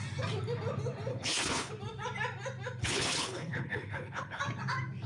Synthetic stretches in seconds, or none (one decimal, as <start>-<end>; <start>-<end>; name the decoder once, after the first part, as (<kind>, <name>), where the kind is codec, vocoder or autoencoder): 1.1-1.7 (codec, HILCodec); 2.8-4.4